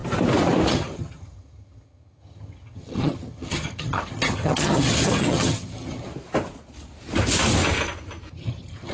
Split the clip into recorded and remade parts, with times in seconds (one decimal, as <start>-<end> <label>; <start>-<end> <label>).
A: 0.0-0.7 recorded; 0.7-6.1 remade; 6.1-8.3 recorded; 8.3-8.9 remade